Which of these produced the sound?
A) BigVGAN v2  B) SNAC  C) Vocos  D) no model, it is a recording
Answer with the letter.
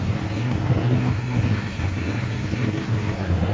B